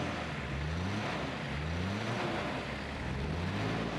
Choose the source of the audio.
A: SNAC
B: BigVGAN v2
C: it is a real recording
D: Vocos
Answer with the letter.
C